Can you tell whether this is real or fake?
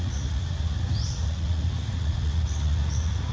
fake